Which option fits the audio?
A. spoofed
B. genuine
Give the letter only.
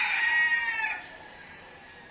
A